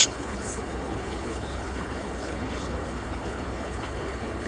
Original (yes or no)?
no